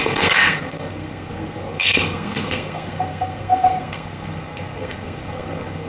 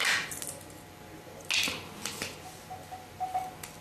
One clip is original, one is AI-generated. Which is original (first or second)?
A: second